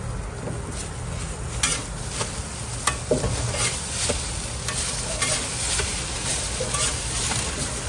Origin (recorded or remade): recorded